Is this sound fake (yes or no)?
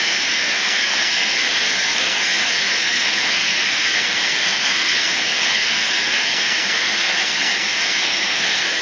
yes